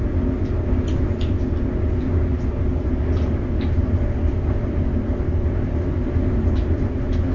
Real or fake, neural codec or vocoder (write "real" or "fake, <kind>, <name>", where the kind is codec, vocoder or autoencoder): real